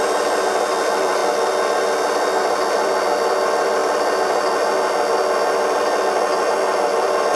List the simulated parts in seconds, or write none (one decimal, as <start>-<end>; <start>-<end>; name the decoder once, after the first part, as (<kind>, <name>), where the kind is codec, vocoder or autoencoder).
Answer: 0.0-1.2 (vocoder, BigVGAN v2); 2.7-3.8; 6.5-7.4